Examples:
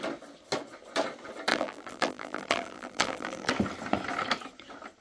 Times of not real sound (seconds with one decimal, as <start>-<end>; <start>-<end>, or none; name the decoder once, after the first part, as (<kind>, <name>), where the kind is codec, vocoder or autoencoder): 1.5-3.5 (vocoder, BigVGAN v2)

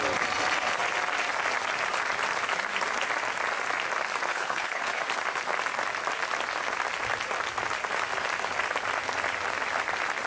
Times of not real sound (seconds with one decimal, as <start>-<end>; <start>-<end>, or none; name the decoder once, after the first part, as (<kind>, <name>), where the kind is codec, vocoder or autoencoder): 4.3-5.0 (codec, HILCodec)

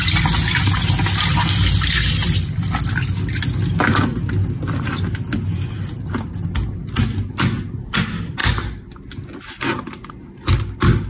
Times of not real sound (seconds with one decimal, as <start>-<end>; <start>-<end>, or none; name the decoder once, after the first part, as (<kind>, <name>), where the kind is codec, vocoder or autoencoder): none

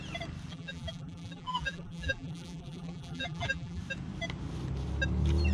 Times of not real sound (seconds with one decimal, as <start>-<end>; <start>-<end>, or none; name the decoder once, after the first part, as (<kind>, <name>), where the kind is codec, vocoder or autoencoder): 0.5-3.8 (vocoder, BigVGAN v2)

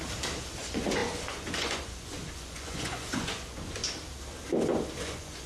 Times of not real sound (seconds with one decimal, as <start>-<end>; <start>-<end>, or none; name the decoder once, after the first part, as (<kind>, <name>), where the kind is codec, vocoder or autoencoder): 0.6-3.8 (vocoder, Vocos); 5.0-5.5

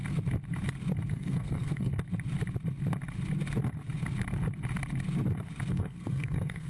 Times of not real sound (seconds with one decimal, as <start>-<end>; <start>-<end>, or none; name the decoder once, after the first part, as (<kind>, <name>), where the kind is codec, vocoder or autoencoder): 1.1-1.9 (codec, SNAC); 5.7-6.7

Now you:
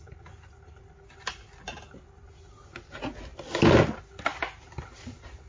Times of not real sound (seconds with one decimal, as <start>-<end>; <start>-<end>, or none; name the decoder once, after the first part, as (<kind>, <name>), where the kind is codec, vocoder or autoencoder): none